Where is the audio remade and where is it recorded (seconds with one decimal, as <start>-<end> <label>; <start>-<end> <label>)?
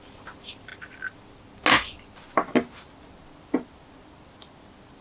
0.0-5.0 recorded